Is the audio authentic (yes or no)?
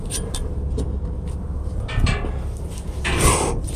yes